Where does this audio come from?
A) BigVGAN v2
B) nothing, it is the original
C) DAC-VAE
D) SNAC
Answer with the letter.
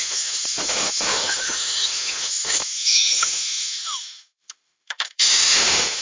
C